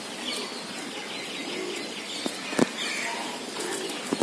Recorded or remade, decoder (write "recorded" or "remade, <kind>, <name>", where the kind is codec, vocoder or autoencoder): recorded